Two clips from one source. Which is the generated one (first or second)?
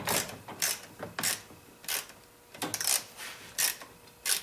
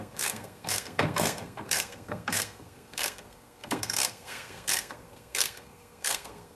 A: second